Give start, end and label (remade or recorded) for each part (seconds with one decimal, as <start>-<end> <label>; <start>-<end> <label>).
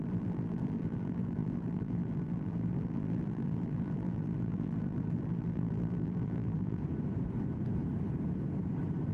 0.0-6.8 remade; 6.8-9.1 recorded